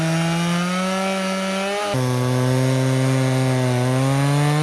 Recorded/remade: recorded